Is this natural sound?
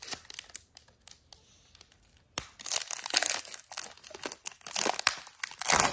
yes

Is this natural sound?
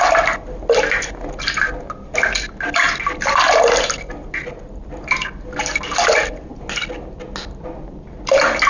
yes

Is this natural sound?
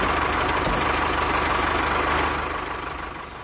yes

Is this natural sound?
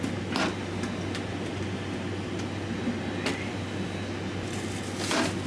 yes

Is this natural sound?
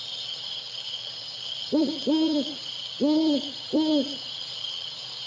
no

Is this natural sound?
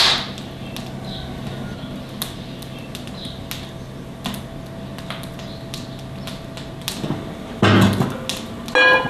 yes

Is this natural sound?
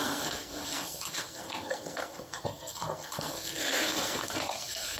no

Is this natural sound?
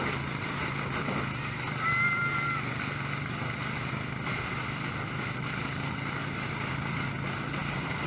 yes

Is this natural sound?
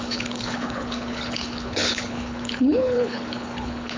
no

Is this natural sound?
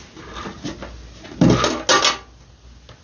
yes